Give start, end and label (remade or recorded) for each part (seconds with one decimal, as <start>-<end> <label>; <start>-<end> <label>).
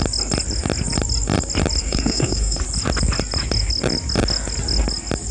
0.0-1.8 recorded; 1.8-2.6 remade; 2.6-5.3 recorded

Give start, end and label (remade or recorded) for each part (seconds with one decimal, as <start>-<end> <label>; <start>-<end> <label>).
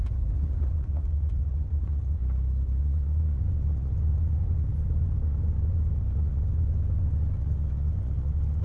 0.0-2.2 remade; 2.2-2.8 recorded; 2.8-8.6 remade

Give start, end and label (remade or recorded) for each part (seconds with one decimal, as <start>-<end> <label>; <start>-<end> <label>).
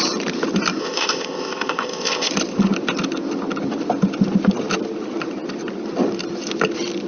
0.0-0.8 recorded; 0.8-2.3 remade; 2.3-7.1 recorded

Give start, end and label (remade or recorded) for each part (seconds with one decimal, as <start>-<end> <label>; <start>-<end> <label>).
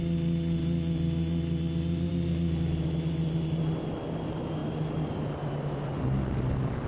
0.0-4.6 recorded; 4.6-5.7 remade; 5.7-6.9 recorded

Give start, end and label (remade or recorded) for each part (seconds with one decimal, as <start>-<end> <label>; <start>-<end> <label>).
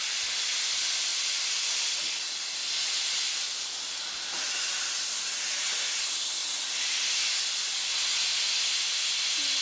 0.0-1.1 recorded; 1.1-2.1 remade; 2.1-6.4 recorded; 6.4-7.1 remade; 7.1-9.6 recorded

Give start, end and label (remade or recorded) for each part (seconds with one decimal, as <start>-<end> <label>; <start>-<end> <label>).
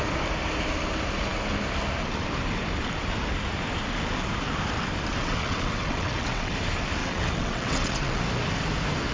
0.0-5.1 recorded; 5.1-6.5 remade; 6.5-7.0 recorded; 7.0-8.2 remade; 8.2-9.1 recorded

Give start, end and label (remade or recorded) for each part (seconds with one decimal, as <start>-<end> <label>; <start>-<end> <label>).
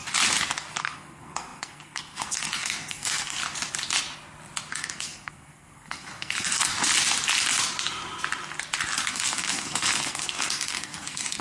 0.0-0.8 recorded; 0.8-3.4 remade; 3.4-4.7 recorded; 4.7-6.7 remade; 6.7-9.1 recorded; 9.1-11.4 remade